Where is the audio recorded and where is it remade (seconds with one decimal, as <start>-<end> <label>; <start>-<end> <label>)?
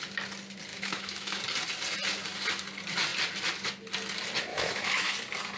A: 0.0-0.7 recorded; 0.7-1.4 remade; 1.4-4.5 recorded; 4.5-5.1 remade; 5.1-5.6 recorded